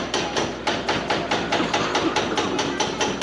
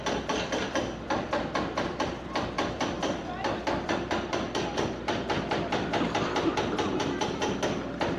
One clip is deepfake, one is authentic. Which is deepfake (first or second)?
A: second